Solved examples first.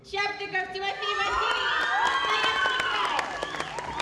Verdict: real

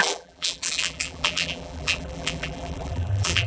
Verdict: fake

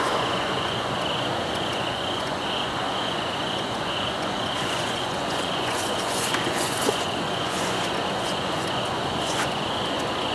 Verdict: fake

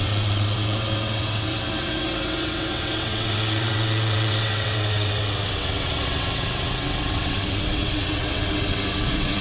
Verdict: fake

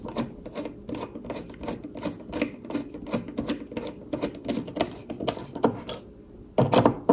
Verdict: real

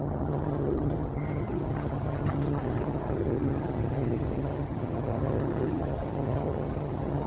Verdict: fake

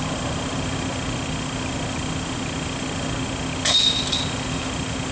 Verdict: real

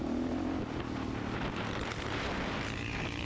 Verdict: real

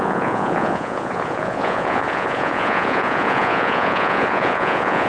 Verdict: fake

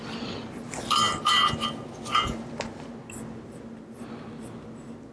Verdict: real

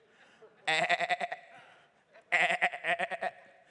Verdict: real